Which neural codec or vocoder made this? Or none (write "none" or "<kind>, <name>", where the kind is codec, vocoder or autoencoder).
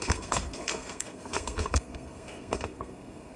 codec, SNAC